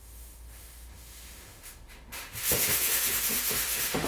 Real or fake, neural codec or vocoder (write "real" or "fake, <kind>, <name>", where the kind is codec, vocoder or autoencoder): fake, autoencoder, DAC-VAE